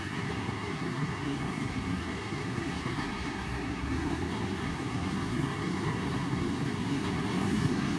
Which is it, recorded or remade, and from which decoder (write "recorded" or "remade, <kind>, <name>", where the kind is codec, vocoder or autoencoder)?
remade, codec, SNAC